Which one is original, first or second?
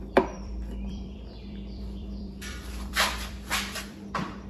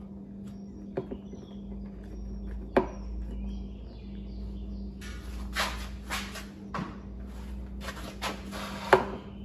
second